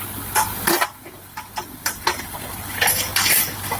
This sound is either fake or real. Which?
real